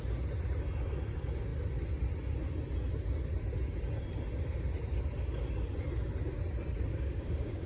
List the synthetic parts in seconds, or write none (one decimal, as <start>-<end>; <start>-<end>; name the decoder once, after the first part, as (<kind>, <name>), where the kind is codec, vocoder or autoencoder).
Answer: 6.9-7.7 (codec, DAC)